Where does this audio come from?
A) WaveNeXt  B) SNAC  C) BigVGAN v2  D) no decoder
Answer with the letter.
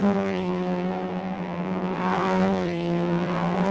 C